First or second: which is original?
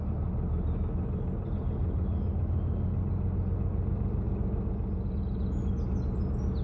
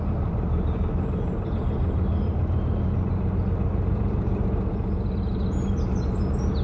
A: first